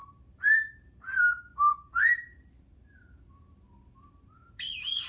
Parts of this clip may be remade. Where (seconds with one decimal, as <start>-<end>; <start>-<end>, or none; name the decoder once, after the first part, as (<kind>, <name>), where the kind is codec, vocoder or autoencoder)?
0.0-0.7 (vocoder, BigVGAN v2); 1.7-5.1